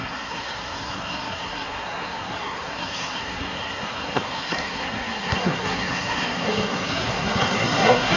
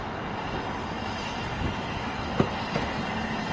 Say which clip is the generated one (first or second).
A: first